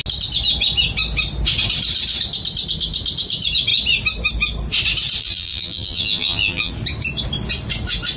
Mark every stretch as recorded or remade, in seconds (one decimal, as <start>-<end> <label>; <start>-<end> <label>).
0.0-5.2 recorded; 5.2-6.7 remade; 6.7-8.2 recorded